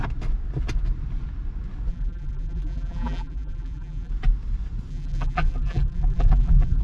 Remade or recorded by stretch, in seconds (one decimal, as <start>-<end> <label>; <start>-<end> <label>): 0.0-1.9 recorded; 1.9-4.1 remade; 4.1-4.9 recorded; 4.9-6.8 remade